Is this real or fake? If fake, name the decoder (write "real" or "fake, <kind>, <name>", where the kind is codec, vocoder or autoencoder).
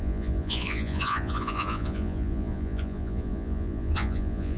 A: fake, vocoder, Vocos